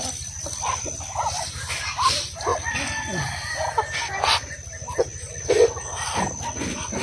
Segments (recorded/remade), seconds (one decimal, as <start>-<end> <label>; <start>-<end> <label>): 0.0-7.0 recorded